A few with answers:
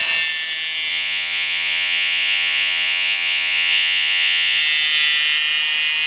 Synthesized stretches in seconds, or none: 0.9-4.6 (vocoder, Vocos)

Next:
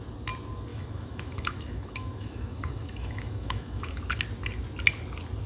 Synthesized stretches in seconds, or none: 0.7-4.0 (autoencoder, DAC-VAE)